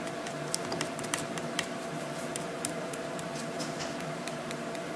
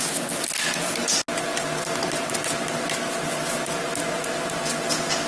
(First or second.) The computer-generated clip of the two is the first